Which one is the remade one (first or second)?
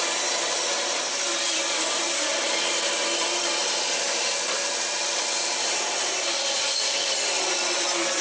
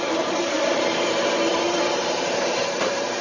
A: second